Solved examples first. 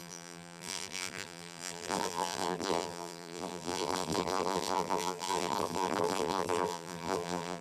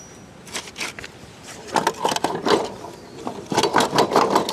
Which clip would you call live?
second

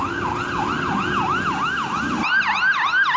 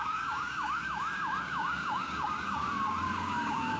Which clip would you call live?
first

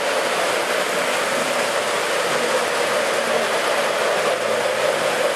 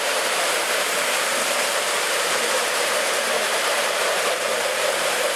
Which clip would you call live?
first